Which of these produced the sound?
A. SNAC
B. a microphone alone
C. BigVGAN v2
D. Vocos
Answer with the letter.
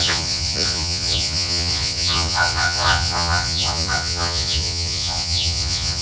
D